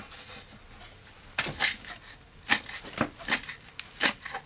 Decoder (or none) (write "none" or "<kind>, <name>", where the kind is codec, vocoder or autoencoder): none